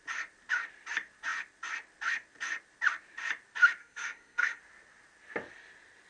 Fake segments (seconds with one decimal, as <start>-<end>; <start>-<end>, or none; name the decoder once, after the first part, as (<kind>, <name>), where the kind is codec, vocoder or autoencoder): 3.8-4.6 (codec, SNAC)